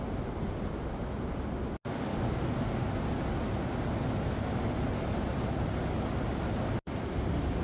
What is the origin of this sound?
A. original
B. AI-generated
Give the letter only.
A